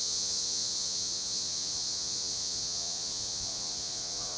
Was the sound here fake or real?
fake